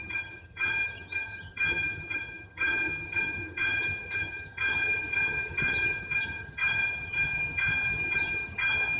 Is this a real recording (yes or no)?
no